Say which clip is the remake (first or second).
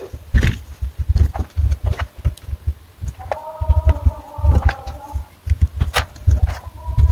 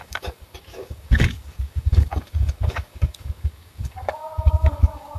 second